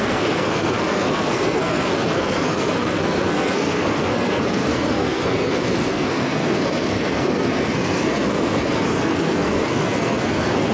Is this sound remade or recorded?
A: remade